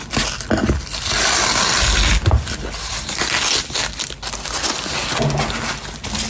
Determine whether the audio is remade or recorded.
recorded